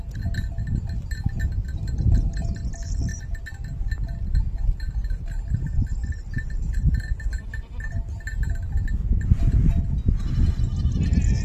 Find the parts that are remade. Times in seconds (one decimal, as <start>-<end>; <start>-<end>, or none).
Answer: none